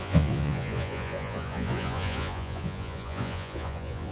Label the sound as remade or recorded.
remade